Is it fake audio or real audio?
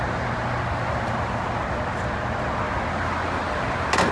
real